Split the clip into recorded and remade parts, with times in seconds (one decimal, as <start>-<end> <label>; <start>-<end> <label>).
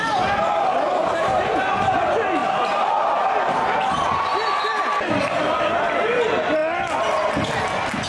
0.0-8.1 recorded